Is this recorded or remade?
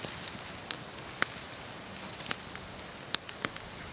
recorded